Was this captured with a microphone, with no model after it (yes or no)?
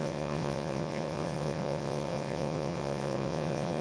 no